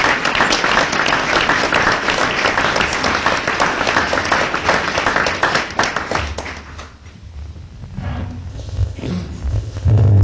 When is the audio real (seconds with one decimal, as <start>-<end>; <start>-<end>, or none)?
0.0-8.5; 9.1-9.5